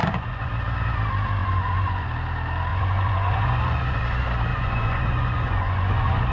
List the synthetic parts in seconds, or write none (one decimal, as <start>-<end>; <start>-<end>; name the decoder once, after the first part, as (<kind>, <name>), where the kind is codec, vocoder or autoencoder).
0.0-0.5 (vocoder, Vocos); 1.4-2.1; 2.7-4.0; 4.5-6.3